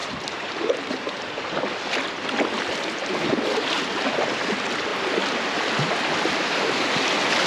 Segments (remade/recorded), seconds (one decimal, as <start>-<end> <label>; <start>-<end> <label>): 0.0-1.6 remade; 1.6-7.5 recorded